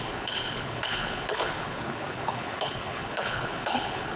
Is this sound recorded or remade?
remade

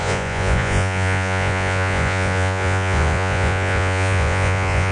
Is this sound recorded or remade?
remade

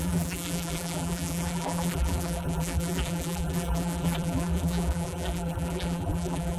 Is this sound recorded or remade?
remade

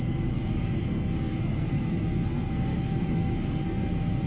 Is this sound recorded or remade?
remade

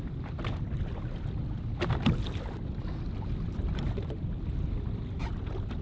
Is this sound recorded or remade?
recorded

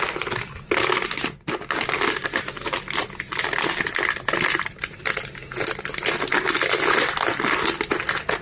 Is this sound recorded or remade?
recorded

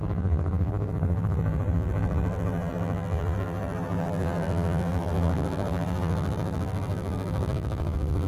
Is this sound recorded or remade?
remade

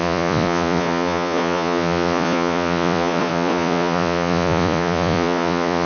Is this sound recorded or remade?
remade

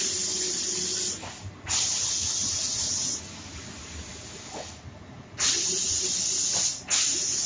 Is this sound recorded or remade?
recorded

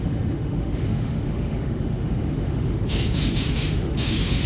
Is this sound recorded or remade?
remade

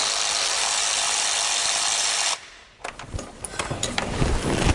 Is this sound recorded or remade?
remade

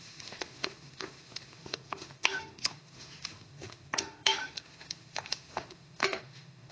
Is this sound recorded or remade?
remade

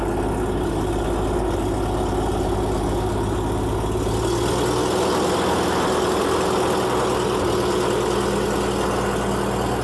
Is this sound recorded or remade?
recorded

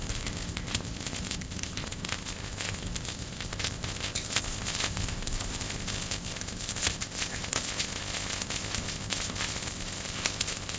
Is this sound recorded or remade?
remade